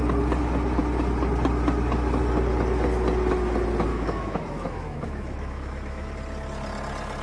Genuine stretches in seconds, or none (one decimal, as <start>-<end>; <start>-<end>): 0.0-3.9; 6.1-7.2

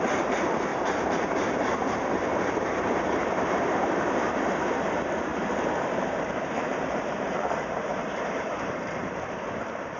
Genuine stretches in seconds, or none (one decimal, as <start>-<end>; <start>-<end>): 5.3-5.9

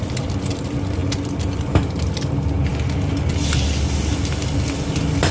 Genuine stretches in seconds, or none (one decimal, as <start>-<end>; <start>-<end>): 0.0-5.3

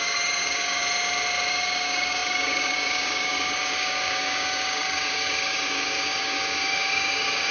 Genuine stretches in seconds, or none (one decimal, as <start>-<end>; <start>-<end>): 0.8-1.5

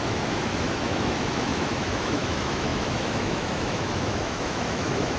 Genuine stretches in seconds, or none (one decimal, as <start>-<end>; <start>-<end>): none

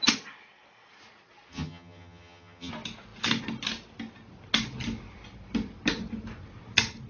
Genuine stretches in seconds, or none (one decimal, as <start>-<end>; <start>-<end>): 0.0-1.5; 2.7-7.1